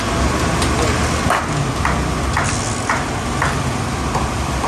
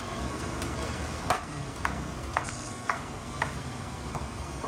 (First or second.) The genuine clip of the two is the first